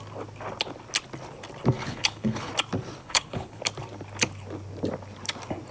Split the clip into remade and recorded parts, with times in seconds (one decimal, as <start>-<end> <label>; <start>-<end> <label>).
0.0-1.8 recorded; 1.8-2.5 remade; 2.5-3.0 recorded; 3.0-3.6 remade; 3.6-5.7 recorded